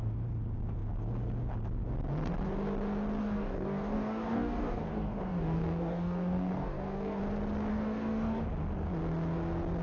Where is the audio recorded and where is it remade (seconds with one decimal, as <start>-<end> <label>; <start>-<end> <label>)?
0.0-3.2 recorded; 3.2-7.2 remade; 7.2-7.7 recorded; 7.7-8.4 remade; 8.4-9.8 recorded

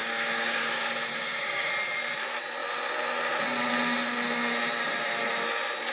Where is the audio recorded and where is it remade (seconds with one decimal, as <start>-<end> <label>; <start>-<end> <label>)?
0.0-1.7 remade; 1.7-5.9 recorded

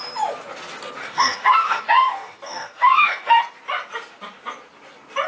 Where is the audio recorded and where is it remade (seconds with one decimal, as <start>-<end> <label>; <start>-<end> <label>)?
0.0-1.0 recorded; 1.0-3.4 remade; 3.4-5.3 recorded

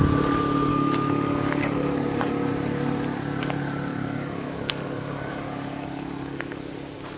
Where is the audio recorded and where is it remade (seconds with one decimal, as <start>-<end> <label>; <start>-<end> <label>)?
0.0-0.7 recorded; 0.7-2.5 remade; 2.5-3.9 recorded; 3.9-6.7 remade; 6.7-7.2 recorded

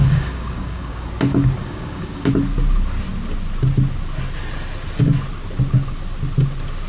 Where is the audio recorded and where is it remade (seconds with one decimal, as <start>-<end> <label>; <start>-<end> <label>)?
0.0-1.1 remade; 1.1-1.6 recorded; 1.6-2.3 remade; 2.3-6.9 recorded

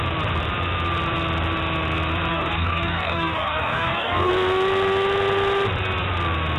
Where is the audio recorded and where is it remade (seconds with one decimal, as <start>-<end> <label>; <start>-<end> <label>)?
0.0-2.3 recorded; 2.3-4.3 remade; 4.3-6.6 recorded

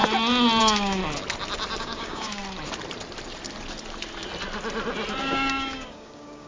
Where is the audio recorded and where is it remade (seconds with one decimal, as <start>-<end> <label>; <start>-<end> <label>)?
0.0-0.6 recorded; 0.6-1.0 remade; 1.0-1.8 recorded; 1.8-2.4 remade; 2.4-5.2 recorded; 5.2-6.5 remade